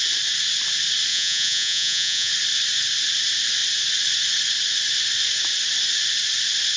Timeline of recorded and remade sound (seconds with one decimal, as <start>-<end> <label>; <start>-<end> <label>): 0.0-1.1 recorded; 1.1-2.3 remade; 2.3-6.8 recorded